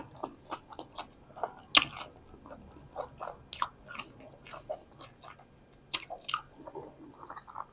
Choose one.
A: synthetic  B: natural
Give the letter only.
B